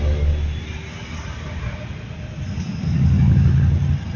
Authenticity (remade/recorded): recorded